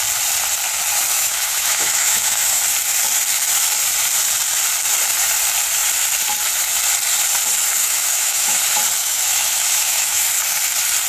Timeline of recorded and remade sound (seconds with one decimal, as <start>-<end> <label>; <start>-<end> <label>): 0.0-1.1 recorded; 1.1-2.6 remade; 2.6-7.8 recorded; 7.8-8.6 remade; 8.6-9.0 recorded; 9.0-10.3 remade; 10.3-11.1 recorded